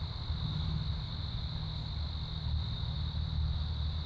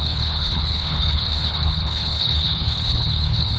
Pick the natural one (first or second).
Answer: first